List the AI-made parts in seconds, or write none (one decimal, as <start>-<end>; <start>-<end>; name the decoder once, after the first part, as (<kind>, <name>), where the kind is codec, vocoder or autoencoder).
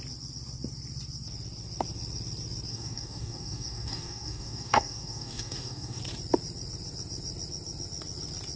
2.7-6.0 (codec, DAC)